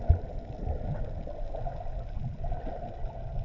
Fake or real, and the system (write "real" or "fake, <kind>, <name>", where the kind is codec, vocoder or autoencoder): real